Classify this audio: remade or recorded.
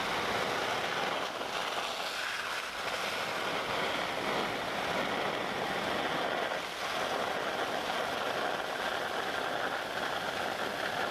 recorded